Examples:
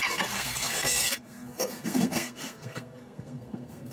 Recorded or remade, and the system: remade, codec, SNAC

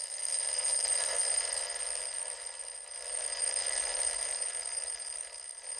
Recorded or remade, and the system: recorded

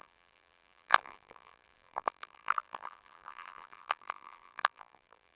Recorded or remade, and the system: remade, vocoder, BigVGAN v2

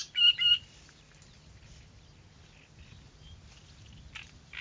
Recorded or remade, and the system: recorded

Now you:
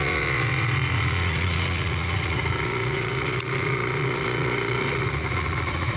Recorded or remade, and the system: remade, vocoder, Vocos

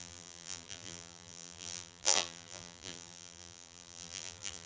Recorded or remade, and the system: remade, vocoder, BigVGAN v2